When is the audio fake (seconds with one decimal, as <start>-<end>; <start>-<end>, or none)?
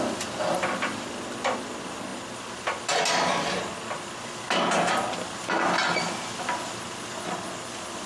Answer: none